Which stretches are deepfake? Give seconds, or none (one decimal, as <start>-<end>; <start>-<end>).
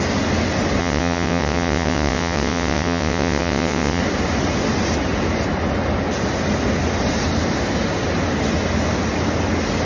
0.8-4.0